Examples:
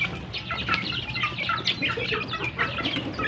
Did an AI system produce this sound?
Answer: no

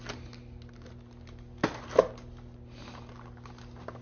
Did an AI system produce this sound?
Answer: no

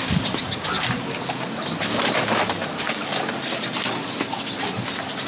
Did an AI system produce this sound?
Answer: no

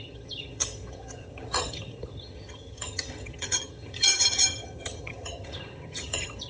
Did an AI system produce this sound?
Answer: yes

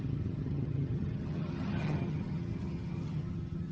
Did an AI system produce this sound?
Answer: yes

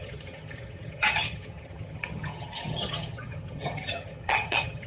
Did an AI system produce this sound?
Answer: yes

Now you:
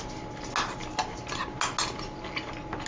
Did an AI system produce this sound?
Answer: no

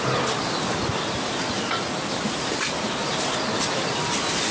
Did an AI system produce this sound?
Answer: no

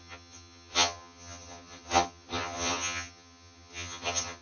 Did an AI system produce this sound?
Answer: yes